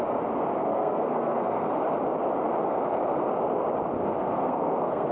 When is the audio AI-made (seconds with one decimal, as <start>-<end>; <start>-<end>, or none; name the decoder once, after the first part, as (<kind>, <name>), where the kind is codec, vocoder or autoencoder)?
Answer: 0.5-1.7 (codec, SNAC); 4.2-5.1